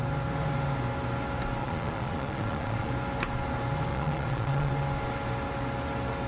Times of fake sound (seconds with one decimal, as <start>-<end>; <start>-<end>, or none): 1.6-2.9; 3.9-4.7